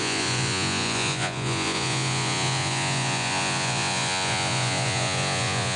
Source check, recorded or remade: remade